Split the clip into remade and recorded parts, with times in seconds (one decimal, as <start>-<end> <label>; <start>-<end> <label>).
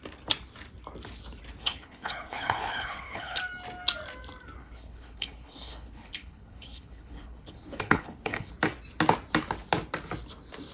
0.0-1.6 recorded; 1.6-3.4 remade; 3.4-4.6 recorded; 4.6-8.5 remade; 8.5-10.7 recorded